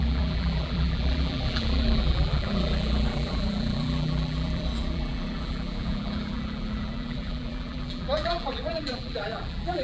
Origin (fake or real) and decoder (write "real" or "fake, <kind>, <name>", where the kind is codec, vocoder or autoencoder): fake, vocoder, BigVGAN v2